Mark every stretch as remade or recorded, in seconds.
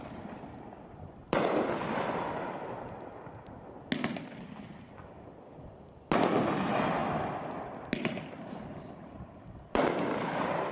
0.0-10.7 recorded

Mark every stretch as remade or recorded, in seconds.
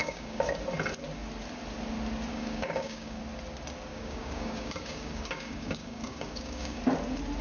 0.0-0.5 remade; 0.5-2.3 recorded; 2.3-3.2 remade; 3.2-3.9 recorded; 3.9-6.8 remade; 6.8-7.4 recorded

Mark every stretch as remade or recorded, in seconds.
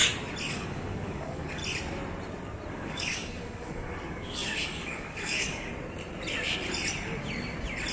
0.0-0.5 recorded; 0.5-1.6 remade; 1.6-2.7 recorded; 2.7-5.7 remade; 5.7-7.9 recorded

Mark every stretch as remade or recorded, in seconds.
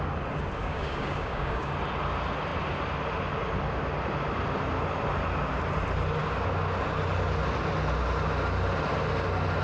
0.0-0.6 recorded; 0.6-1.7 remade; 1.7-9.6 recorded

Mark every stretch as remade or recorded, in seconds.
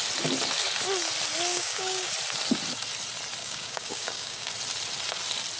0.0-1.5 recorded; 1.5-2.1 remade; 2.1-3.4 recorded; 3.4-4.5 remade; 4.5-5.6 recorded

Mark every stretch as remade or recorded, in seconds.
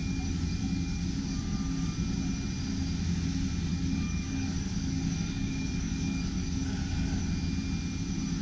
0.0-1.9 remade; 1.9-3.7 recorded; 3.7-7.2 remade; 7.2-8.4 recorded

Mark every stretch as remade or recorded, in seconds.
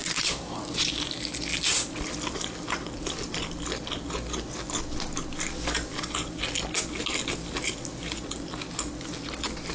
0.0-0.6 remade; 0.6-9.7 recorded